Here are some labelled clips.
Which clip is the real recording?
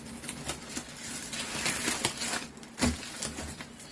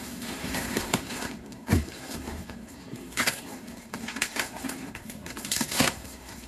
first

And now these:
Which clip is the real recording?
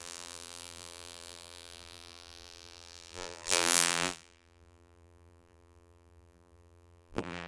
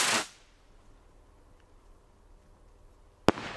second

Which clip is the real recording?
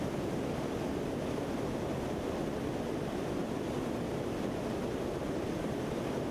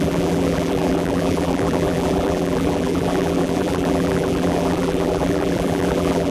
first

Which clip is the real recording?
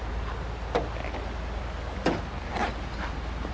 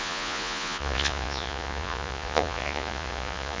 first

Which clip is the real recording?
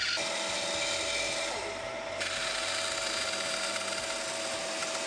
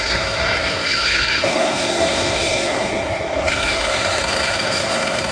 first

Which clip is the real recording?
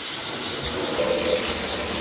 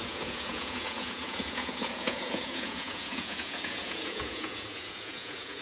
first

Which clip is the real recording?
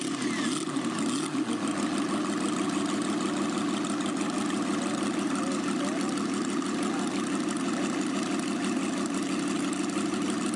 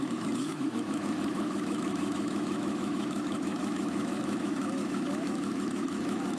first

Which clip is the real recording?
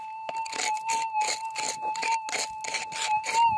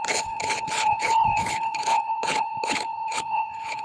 first